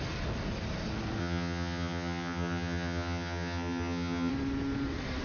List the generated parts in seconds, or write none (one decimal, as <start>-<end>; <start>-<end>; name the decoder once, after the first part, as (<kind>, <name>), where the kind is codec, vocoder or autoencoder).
1.2-4.3 (vocoder, HiFi-GAN)